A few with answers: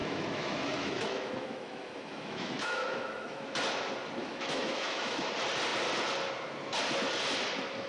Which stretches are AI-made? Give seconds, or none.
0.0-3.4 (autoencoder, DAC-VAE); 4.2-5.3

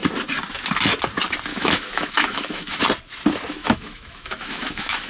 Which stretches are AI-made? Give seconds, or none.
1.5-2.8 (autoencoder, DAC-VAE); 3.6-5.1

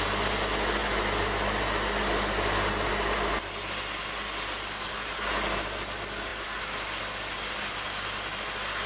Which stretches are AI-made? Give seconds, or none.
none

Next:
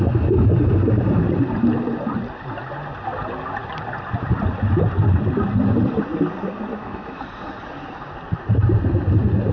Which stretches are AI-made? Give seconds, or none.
6.7-7.2 (autoencoder, DAC-VAE)

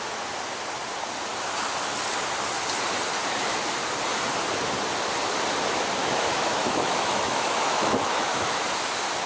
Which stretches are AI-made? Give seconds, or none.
6.0-8.6 (autoencoder, DAC-VAE)